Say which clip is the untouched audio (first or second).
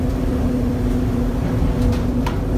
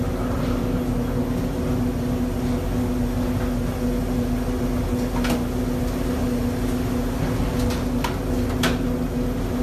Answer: second